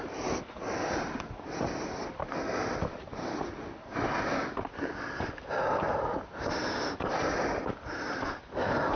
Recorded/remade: recorded